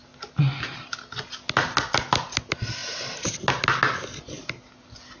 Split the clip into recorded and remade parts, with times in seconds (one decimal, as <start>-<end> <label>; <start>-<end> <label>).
0.0-5.2 recorded